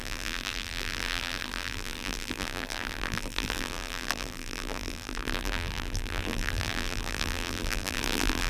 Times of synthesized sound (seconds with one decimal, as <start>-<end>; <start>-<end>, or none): 0.0-8.5

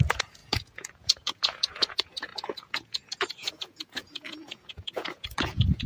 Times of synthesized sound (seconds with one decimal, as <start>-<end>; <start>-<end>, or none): 0.0-5.9